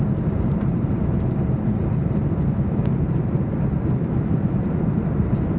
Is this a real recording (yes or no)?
no